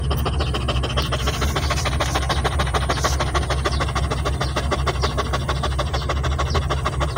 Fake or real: real